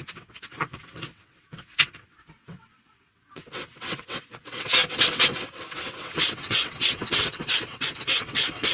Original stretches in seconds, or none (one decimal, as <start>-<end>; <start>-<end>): none